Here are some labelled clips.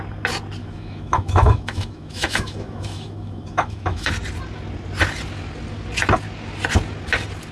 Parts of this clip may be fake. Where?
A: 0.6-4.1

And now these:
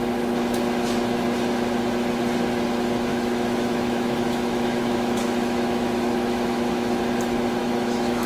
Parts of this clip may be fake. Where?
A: 3.1-7.0; 7.6-8.3

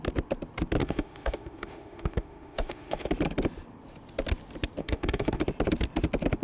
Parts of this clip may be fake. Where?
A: 0.8-3.1; 4.8-5.4

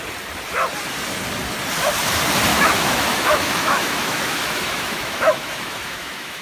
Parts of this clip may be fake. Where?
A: 2.5-6.4

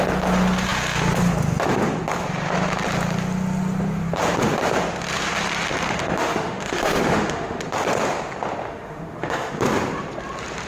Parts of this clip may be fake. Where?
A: 6.0-7.6; 8.6-9.5

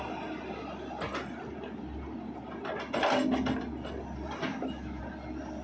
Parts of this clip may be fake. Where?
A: 4.5-5.0

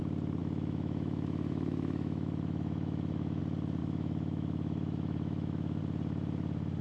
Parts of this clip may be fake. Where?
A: 0.4-3.4; 3.8-5.8

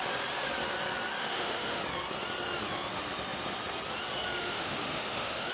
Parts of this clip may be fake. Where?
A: 1.2-1.8; 4.4-5.5